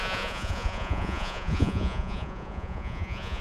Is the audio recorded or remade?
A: remade